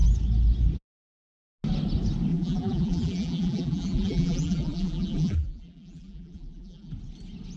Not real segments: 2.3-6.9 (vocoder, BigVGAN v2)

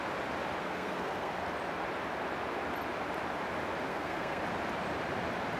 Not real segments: 0.6-1.3 (codec, SNAC); 3.9-4.4

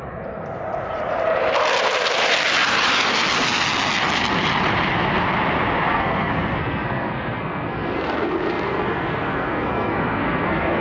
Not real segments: 5.9-10.8 (codec, SNAC)